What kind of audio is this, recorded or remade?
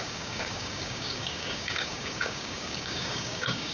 remade